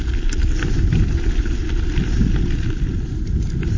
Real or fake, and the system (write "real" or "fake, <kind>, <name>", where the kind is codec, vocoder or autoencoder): real